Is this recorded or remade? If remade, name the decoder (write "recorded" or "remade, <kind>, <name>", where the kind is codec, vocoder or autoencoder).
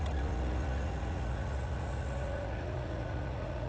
remade, vocoder, Vocos